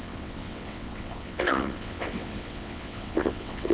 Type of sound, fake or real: fake